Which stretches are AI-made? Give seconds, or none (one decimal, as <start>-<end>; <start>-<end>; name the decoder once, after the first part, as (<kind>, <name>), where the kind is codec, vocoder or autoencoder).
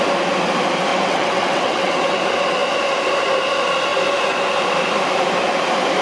0.9-2.2 (vocoder, WaveNeXt)